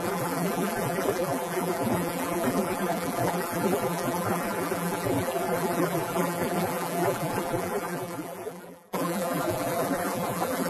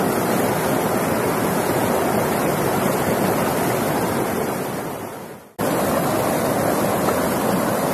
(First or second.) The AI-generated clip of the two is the first